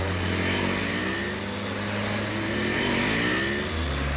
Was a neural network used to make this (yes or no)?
no